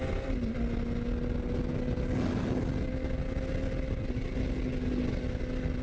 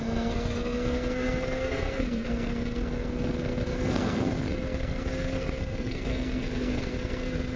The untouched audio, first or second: first